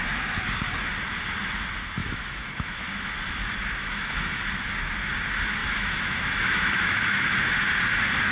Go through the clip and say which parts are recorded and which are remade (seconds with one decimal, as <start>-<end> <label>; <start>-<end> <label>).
0.0-2.0 recorded; 2.0-3.1 remade; 3.1-3.8 recorded; 3.8-4.4 remade; 4.4-5.6 recorded; 5.6-7.7 remade; 7.7-8.3 recorded